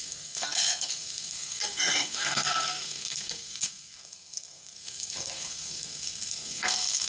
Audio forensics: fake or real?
fake